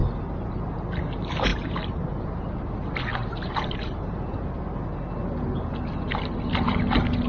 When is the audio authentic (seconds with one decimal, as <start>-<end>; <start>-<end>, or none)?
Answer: 0.7-1.5; 2.1-3.1; 4.6-7.3